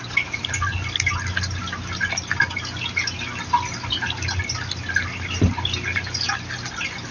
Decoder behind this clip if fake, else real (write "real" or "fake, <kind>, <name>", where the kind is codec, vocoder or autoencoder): real